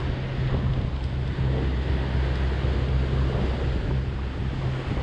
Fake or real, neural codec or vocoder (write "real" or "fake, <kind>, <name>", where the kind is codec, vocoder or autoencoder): real